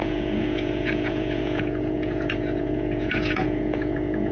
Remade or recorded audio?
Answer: remade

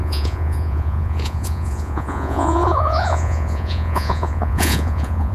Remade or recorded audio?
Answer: remade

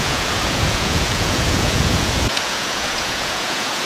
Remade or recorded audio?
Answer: remade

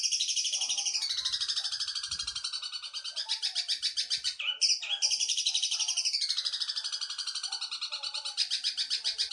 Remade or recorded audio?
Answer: recorded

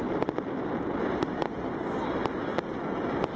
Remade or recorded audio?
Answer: recorded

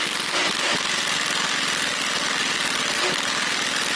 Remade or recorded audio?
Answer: recorded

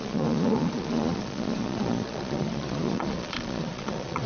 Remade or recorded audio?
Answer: remade